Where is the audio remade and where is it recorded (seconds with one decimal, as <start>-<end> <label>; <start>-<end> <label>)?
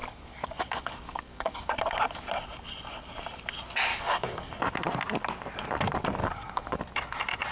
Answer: 0.0-1.7 remade; 1.7-3.9 recorded; 3.9-4.5 remade; 4.5-6.2 recorded; 6.2-6.8 remade; 6.8-7.5 recorded